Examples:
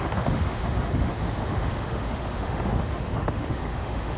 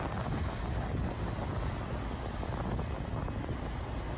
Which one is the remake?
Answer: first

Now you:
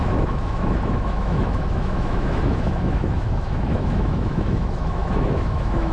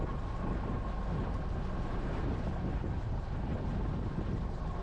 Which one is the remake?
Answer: first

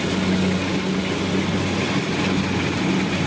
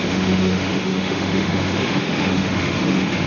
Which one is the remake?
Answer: second